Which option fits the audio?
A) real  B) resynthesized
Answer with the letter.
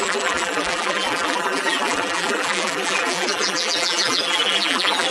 B